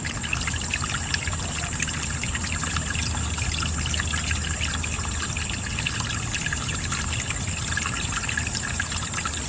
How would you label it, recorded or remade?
recorded